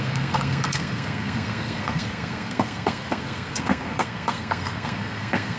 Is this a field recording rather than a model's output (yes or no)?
no